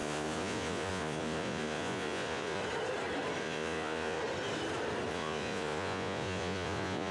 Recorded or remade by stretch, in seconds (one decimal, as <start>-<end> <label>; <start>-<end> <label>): 0.0-2.6 remade; 2.6-3.4 recorded; 3.4-4.2 remade; 4.2-5.1 recorded; 5.1-7.1 remade